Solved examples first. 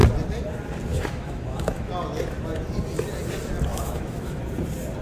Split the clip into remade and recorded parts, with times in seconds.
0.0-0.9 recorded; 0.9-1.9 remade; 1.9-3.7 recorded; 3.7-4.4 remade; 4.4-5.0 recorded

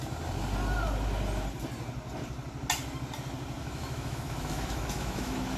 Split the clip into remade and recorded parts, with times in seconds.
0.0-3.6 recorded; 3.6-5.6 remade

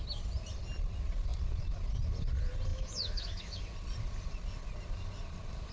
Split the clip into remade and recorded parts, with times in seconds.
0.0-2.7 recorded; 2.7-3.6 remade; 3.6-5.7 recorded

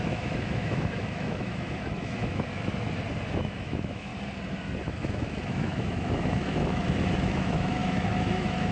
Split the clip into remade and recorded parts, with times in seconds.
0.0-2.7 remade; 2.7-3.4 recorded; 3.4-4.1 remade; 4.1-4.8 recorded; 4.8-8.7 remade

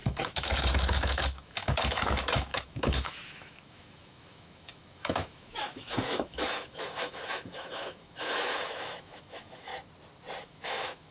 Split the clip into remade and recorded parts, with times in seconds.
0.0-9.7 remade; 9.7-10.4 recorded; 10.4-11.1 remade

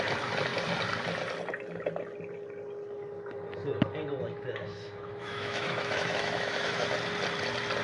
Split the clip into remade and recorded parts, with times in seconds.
0.0-4.7 recorded; 4.7-6.9 remade; 6.9-7.8 recorded

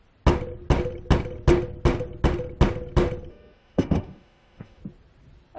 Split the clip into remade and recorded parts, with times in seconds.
0.0-3.3 recorded; 3.3-4.8 remade; 4.8-5.6 recorded